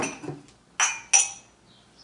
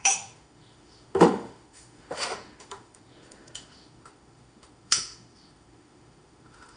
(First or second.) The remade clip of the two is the second